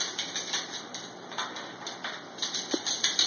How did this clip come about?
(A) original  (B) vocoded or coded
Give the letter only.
A